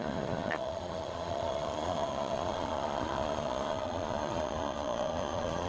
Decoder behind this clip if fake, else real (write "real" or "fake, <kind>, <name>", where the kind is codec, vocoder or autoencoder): fake, vocoder, Vocos